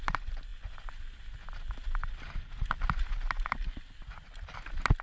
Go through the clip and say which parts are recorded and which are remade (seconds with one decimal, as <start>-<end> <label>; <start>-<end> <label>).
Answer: 0.0-5.0 recorded